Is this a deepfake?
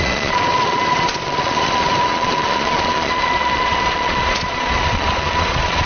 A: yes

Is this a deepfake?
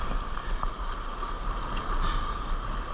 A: no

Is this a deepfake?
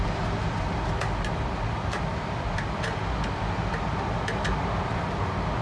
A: no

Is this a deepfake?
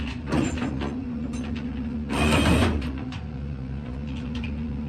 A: yes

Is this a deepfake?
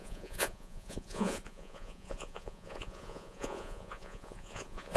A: yes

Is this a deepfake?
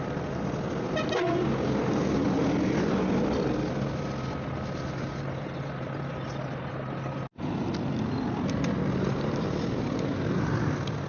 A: no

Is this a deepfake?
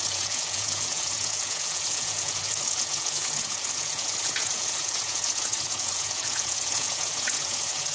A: yes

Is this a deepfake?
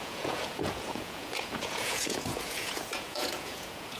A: yes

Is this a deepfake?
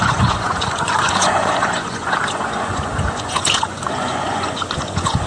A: yes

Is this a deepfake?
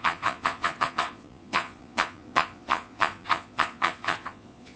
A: yes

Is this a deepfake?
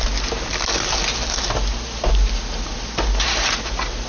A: no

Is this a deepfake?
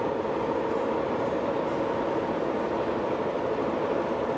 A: no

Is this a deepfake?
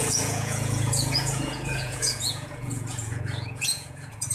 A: yes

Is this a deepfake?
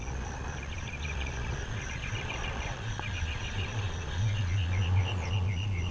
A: yes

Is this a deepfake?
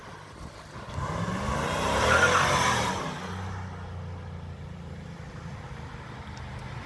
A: no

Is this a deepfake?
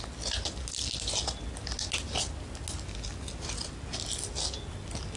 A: no